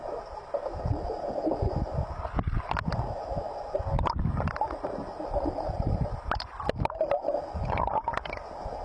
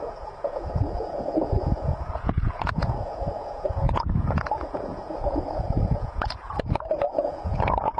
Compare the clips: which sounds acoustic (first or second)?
first